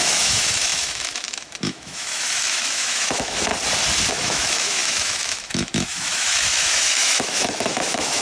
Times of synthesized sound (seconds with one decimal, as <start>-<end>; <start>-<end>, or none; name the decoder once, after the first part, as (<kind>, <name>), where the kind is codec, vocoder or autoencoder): 0.0-3.5 (autoencoder, DAC-VAE); 4.1-8.2